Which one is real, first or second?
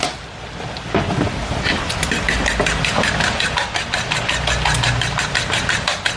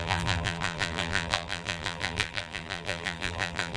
first